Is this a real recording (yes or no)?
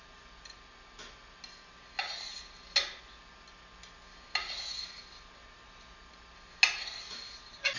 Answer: yes